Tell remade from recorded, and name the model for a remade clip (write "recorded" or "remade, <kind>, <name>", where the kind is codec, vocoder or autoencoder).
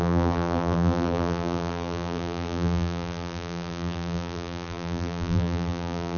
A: remade, vocoder, BigVGAN v2